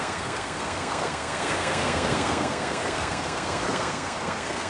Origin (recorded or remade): remade